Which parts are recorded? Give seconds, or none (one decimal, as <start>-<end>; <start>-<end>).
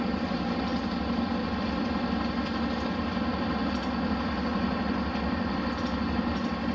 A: 0.0-6.7